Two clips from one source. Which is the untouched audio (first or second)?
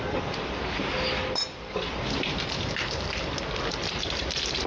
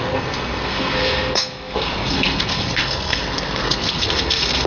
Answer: first